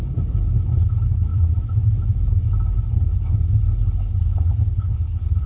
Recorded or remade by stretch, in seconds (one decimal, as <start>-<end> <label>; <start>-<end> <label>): 0.0-1.3 remade; 1.3-2.9 recorded; 2.9-5.5 remade